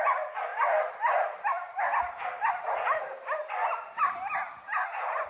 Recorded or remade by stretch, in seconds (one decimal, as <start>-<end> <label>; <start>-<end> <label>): 0.0-5.3 recorded